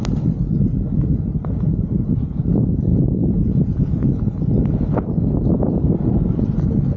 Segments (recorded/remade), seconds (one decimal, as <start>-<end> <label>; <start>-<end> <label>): 0.0-7.0 recorded